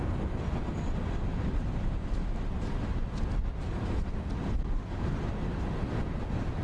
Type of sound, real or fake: real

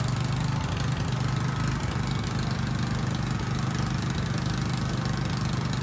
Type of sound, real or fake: real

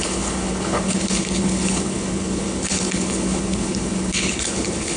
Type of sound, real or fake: fake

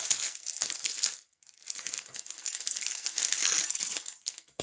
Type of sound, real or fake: fake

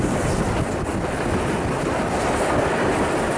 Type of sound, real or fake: real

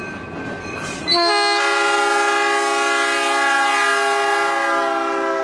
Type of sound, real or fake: real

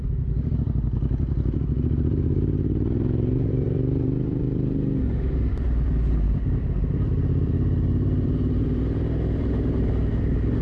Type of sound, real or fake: fake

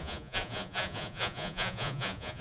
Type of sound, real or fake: fake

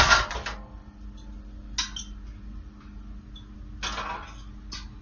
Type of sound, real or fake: real